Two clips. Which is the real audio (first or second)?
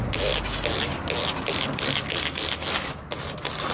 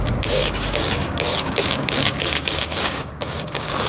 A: first